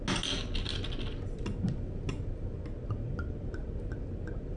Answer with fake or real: real